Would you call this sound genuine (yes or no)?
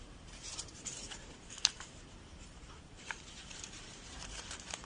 no